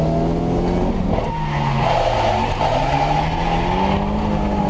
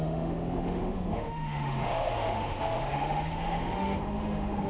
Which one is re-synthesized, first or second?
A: second